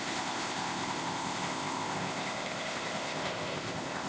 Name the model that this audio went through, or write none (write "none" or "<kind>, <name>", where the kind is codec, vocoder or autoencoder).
codec, ZipCodec